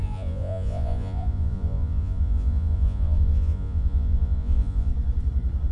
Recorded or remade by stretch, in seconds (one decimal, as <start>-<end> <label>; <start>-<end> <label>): 0.0-4.9 remade; 4.9-5.7 recorded